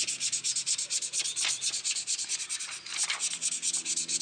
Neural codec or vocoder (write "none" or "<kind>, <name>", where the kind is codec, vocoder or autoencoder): none